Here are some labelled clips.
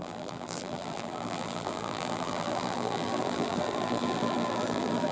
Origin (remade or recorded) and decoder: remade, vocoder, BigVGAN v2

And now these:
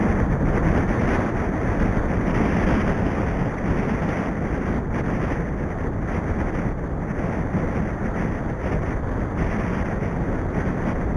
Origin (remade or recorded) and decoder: recorded